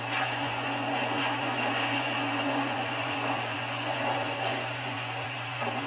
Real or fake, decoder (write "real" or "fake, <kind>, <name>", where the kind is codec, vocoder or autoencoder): fake, vocoder, Vocos